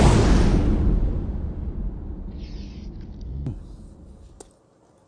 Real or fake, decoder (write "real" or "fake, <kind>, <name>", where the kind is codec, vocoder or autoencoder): real